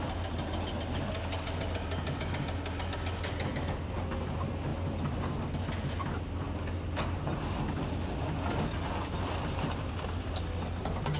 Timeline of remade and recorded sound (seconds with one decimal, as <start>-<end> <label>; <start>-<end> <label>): 0.0-11.2 recorded